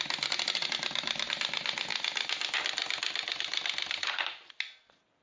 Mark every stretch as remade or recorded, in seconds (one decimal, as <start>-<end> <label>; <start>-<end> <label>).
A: 0.0-5.2 recorded